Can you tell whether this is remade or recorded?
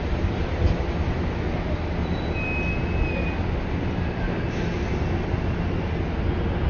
recorded